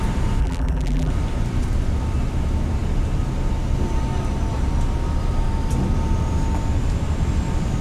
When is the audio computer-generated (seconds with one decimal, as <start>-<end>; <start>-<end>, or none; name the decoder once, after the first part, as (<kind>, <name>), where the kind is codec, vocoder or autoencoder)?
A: 0.4-1.1 (vocoder, BigVGAN v2)

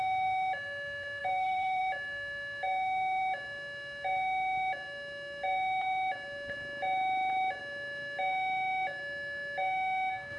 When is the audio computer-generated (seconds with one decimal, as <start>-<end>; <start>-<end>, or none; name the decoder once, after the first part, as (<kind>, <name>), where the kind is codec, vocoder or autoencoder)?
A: 1.2-1.8 (vocoder, BigVGAN v2)

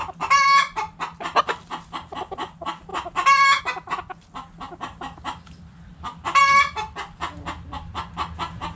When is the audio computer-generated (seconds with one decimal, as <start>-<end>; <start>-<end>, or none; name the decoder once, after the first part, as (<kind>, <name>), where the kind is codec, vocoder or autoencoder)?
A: none

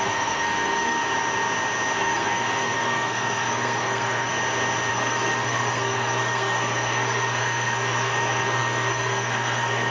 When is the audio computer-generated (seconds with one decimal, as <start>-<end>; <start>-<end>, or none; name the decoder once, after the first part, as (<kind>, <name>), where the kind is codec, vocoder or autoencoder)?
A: 0.0-1.0 (codec, SNAC); 2.0-4.3; 4.9-9.9

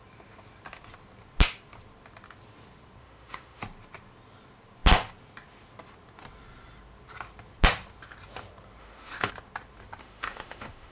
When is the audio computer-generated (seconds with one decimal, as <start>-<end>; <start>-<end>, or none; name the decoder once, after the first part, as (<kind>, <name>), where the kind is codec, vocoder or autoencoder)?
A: 3.0-3.6 (autoencoder, DAC-VAE); 8.8-9.3; 10.0-10.9

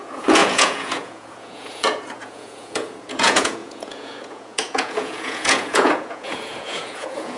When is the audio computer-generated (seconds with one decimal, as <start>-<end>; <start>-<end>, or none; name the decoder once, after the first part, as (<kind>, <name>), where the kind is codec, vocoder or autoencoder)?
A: 0.0-7.4 (vocoder, Vocos)

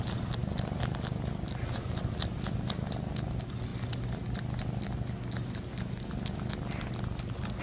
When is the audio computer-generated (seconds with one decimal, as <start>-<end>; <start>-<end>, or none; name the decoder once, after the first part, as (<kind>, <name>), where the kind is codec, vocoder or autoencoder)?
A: none